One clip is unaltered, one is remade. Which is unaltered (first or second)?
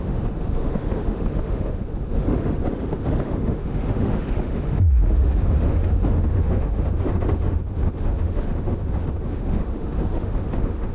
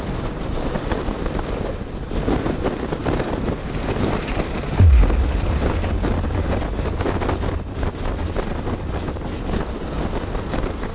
second